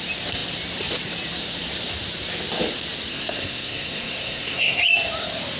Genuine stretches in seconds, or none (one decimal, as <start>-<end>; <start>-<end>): 0.0-3.1; 4.8-5.6